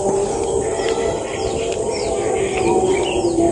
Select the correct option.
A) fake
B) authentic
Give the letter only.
B